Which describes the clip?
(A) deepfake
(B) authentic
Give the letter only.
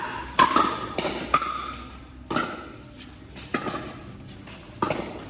B